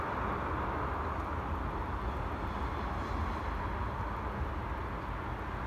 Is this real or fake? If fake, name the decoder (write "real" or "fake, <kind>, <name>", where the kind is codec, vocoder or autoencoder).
real